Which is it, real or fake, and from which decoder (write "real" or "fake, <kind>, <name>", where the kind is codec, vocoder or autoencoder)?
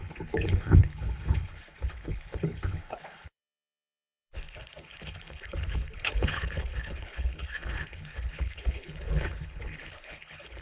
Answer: fake, codec, HILCodec